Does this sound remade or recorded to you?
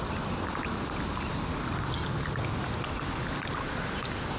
recorded